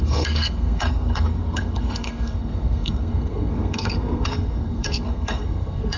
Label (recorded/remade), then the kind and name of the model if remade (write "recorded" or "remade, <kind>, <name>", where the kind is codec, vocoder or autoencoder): remade, codec, SNAC